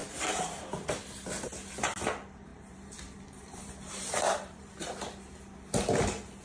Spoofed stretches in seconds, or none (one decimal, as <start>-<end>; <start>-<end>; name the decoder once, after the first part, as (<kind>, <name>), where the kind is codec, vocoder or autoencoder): 0.0-1.0 (vocoder, BigVGAN v2); 2.5-4.7